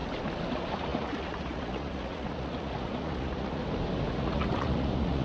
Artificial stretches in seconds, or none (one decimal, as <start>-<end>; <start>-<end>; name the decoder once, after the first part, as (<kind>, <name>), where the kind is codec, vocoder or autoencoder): 0.5-3.6 (vocoder, Vocos); 4.1-5.2